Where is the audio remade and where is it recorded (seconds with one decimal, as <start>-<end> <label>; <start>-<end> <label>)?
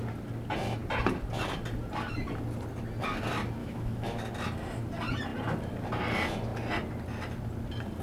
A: 0.0-3.6 recorded; 3.6-4.2 remade; 4.2-8.0 recorded